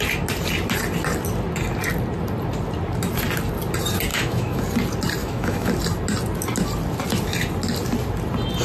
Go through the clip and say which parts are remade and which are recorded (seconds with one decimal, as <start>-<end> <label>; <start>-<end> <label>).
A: 0.0-4.1 recorded; 4.1-4.6 remade; 4.6-5.2 recorded; 5.2-5.7 remade; 5.7-8.6 recorded